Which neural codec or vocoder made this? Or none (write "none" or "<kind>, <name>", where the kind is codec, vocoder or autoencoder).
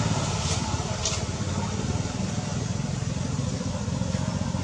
none